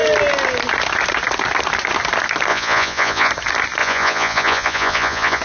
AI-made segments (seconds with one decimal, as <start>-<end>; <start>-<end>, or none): 2.5-3.3; 3.8-5.4